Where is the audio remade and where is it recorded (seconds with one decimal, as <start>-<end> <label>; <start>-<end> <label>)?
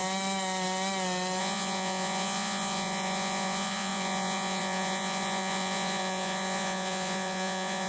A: 0.0-1.4 recorded; 1.4-7.9 remade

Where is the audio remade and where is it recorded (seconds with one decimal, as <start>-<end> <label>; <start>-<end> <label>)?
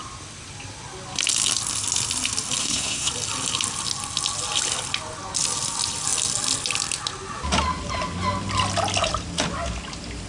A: 0.0-2.6 recorded; 2.6-3.1 remade; 3.1-10.3 recorded